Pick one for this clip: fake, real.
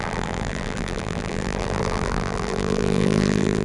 fake